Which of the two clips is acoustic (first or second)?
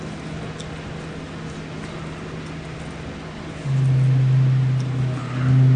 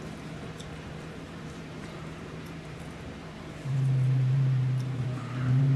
first